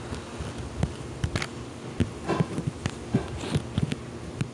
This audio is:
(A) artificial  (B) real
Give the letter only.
B